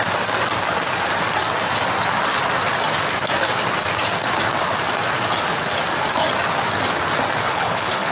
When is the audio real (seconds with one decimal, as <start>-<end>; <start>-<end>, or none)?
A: 0.0-7.4